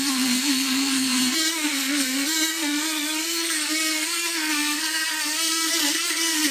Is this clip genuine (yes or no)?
no